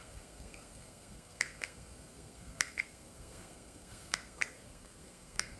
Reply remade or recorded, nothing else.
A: remade